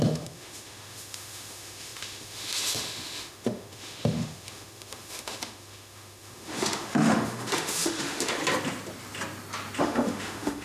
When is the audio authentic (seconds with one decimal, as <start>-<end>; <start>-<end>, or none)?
8.4-9.8